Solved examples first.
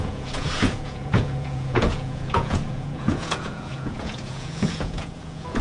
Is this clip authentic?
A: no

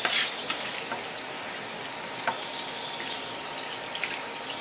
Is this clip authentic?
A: yes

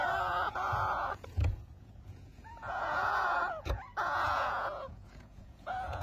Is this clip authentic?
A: no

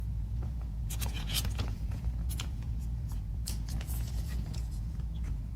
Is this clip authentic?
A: no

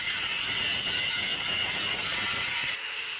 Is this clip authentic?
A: no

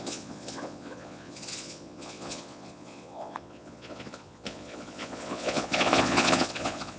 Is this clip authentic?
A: no